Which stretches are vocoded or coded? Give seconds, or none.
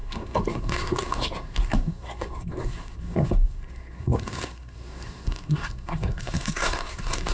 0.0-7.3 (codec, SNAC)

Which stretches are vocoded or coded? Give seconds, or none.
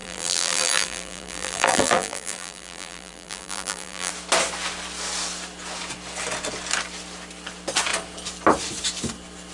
0.0-4.1 (vocoder, BigVGAN v2)